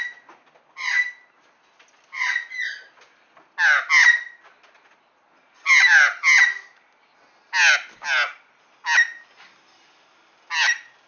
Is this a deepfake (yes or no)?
no